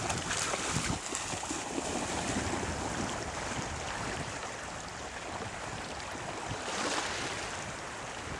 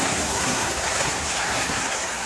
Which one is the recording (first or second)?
first